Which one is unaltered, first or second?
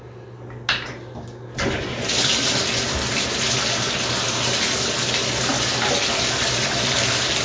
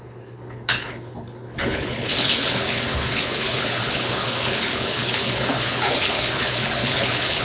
first